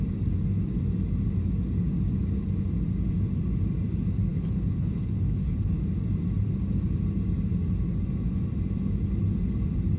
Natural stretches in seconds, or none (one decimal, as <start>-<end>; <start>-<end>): 0.0-4.3; 5.8-10.0